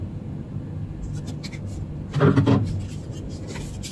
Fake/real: real